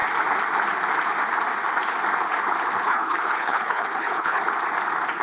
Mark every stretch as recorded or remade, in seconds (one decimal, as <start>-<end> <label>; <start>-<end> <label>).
0.0-2.8 recorded; 2.8-4.4 remade; 4.4-5.2 recorded